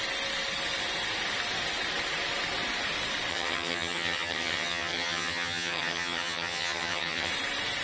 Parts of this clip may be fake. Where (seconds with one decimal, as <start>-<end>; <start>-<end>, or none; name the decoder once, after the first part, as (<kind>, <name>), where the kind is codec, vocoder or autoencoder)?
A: 3.3-7.3 (vocoder, HiFi-GAN)